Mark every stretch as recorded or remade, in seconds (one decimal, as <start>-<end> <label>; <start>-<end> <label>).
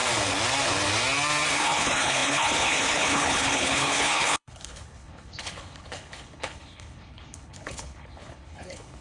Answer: 0.0-1.5 recorded; 1.5-9.0 remade